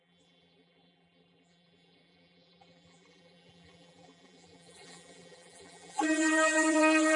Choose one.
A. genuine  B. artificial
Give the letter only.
B